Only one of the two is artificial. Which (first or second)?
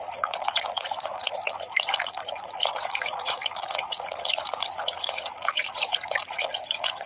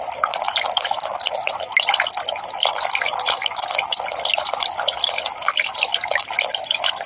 first